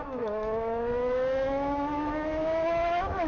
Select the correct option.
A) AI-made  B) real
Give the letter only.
A